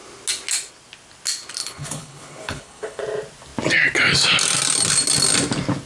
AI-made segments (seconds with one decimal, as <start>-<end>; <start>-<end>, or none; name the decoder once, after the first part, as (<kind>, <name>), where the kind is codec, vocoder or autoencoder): 1.6-3.0 (codec, HILCodec)